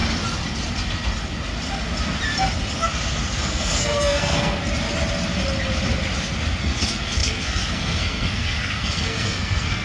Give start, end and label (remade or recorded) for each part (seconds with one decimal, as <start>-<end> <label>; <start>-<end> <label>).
0.0-3.4 recorded; 3.4-4.6 remade; 4.6-6.6 recorded; 6.6-9.8 remade